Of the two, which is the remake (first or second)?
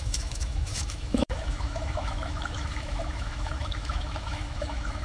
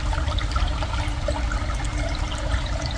first